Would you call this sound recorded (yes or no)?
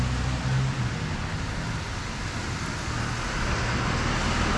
yes